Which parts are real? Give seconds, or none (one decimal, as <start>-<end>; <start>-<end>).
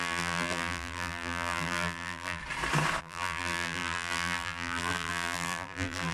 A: 2.4-3.0